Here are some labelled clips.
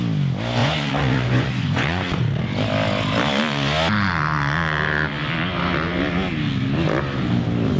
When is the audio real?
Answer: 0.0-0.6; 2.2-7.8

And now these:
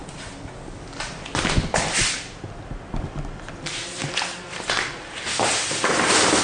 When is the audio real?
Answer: 0.0-6.4

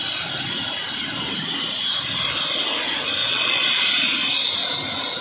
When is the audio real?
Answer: 0.0-3.2; 3.7-5.2